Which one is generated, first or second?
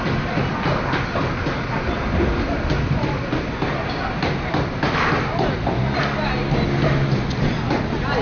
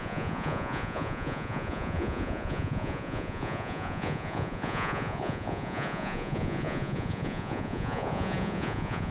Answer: second